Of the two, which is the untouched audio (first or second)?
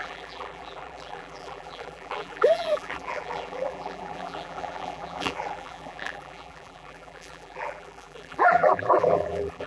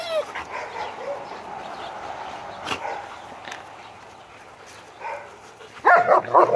second